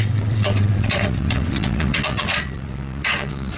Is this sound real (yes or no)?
no